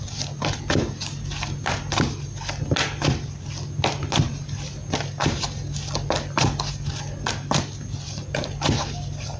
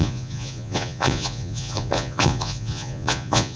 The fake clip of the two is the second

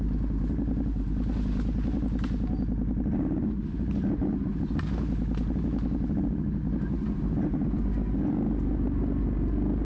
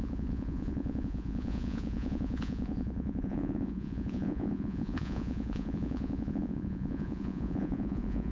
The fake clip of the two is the second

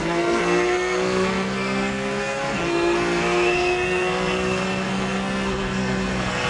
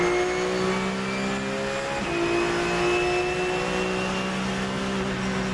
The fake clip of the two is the first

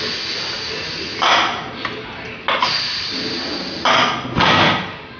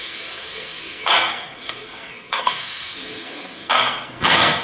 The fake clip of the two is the second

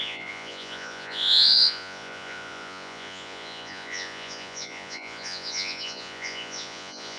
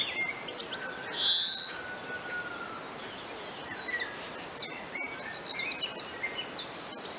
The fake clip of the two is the first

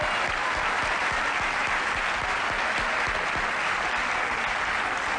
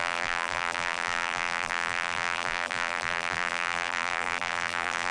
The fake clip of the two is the second